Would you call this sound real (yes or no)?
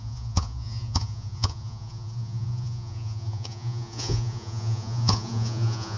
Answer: no